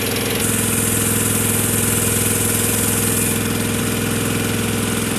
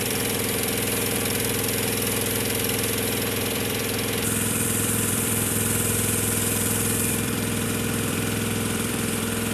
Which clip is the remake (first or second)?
second